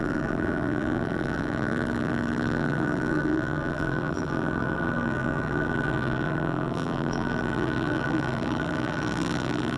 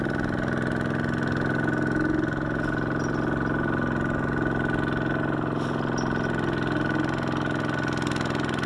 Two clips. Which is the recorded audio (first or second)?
second